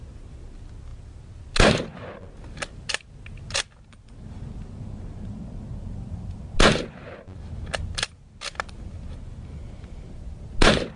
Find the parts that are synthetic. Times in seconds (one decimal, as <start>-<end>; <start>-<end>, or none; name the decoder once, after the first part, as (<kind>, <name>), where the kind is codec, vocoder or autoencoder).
none